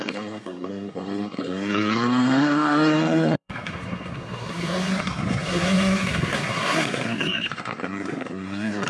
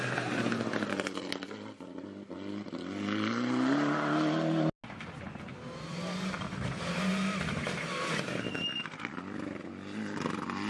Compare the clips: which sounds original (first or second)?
second